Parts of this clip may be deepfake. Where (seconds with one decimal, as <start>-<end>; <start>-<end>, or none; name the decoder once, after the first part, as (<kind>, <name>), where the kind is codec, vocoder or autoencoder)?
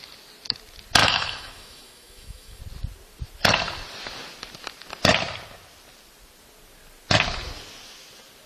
1.0-2.6 (autoencoder, DAC-VAE)